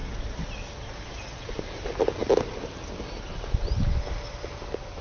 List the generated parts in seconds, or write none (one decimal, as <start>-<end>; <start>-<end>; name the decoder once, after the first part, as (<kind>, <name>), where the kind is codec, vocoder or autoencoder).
none